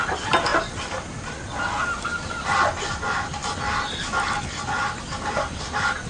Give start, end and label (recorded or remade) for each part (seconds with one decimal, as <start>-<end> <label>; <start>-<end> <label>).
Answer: 0.0-6.1 recorded